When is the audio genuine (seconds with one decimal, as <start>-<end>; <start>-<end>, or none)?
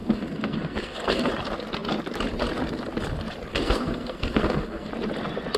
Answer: 1.3-3.5; 4.9-5.6